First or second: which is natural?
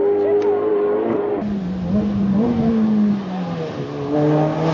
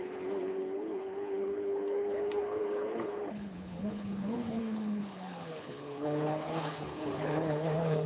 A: first